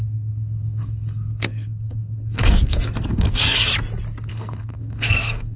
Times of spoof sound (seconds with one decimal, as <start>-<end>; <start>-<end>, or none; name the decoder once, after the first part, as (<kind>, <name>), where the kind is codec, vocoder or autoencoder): 0.0-3.7 (codec, SNAC); 4.3-5.6